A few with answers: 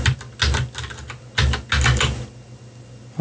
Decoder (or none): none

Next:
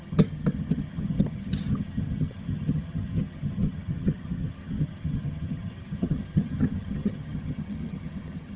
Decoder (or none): vocoder, HiFi-GAN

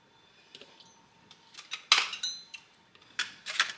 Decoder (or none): none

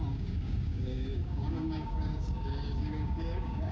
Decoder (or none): codec, DAC